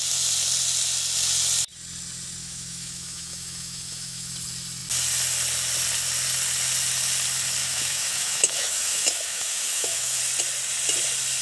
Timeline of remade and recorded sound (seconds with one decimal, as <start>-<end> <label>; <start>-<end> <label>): 0.0-2.4 recorded; 2.4-4.3 remade; 4.3-7.6 recorded; 7.6-10.2 remade; 10.2-11.4 recorded